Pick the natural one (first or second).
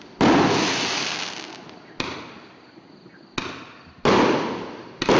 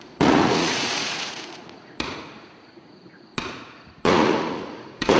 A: first